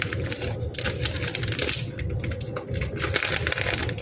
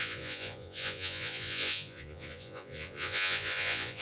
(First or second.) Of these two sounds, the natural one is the first